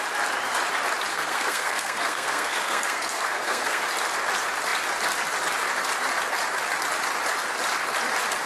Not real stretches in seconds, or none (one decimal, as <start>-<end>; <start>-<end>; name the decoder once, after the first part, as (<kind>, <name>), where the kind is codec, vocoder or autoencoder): 1.1-3.8 (codec, SNAC)